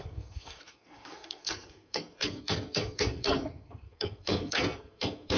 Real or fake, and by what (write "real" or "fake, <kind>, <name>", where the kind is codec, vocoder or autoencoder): fake, codec, SNAC